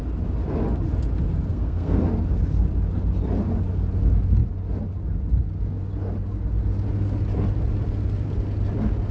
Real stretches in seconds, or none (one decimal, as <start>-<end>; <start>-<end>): 0.0-1.5; 2.0-9.1